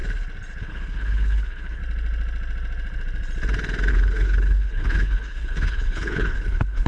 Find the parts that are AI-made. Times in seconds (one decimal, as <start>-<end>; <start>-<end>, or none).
0.6-1.8; 3.9-6.9